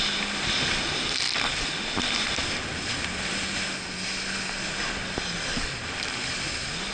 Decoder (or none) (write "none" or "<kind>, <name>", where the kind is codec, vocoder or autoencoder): none